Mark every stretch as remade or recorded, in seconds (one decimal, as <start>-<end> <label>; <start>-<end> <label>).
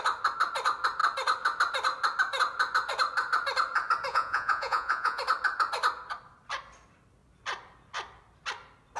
0.0-4.1 recorded; 4.1-5.2 remade; 5.2-9.0 recorded